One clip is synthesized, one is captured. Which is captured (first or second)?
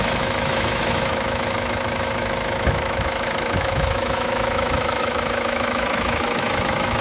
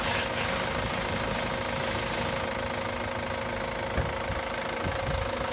second